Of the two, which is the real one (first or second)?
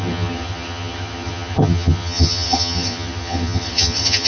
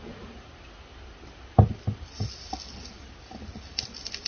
second